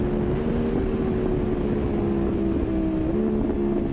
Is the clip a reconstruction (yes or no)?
no